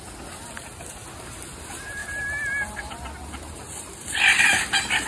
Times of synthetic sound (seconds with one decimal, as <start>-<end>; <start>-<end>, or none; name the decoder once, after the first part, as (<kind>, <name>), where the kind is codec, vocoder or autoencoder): none